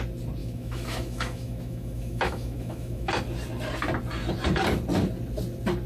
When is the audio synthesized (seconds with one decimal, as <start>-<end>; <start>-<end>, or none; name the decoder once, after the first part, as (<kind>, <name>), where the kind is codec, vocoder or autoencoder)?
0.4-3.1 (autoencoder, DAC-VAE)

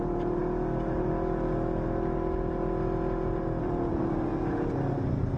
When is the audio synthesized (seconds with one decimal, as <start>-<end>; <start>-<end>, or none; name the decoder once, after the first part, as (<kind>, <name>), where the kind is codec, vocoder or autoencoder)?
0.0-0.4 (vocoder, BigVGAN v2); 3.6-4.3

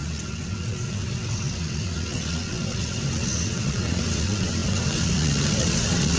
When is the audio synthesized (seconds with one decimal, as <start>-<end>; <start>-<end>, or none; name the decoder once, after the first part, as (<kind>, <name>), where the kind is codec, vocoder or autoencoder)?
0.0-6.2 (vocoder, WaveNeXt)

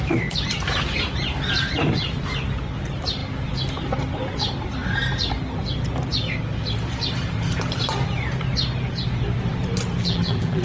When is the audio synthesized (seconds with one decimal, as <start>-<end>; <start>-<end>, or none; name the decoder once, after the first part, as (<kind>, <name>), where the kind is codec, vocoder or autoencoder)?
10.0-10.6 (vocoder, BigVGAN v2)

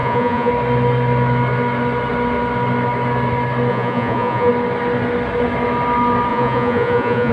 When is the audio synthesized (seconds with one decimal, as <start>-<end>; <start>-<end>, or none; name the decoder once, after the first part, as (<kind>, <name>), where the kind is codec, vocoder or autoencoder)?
0.0-0.5 (vocoder, Vocos); 3.7-4.5; 6.3-7.3

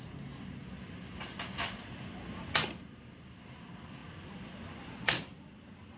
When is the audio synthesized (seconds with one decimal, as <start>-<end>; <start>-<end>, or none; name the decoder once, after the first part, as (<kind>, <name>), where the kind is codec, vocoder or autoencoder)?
none

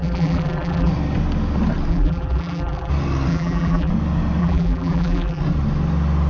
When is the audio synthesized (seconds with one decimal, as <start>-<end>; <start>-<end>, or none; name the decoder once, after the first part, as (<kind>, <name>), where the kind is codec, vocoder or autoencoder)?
0.0-0.9 (vocoder, BigVGAN v2); 1.9-2.9; 3.3-3.9; 4.4-5.4

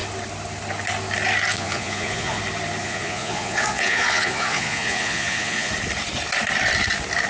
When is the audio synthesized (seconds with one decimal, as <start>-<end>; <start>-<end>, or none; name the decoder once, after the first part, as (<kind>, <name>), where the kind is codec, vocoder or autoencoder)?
1.5-2.4 (vocoder, Vocos); 2.8-5.7